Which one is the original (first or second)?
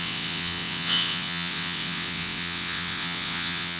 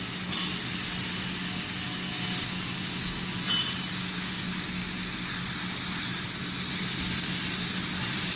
second